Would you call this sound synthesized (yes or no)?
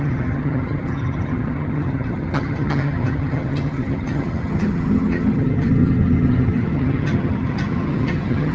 yes